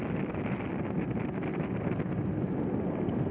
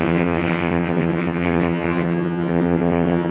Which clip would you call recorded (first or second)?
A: first